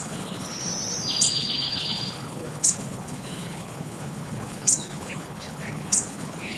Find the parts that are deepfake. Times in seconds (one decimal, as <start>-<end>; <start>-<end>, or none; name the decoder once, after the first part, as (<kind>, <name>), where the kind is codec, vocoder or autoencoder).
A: 0.0-0.7 (codec, HILCodec); 1.3-6.6